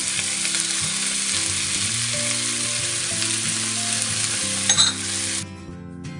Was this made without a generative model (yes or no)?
yes